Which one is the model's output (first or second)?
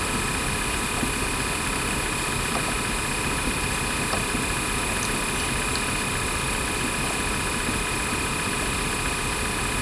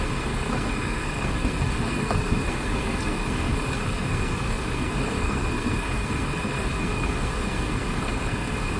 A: second